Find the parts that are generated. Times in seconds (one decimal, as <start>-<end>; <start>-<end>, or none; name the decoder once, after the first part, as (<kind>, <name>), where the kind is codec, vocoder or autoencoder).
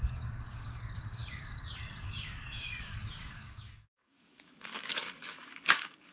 0.0-6.1 (codec, DAC)